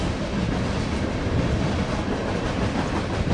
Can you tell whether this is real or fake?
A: real